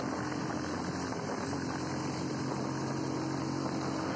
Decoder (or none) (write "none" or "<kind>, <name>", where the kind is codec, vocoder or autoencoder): none